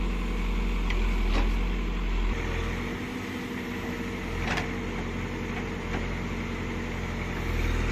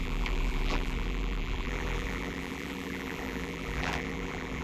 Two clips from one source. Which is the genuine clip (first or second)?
first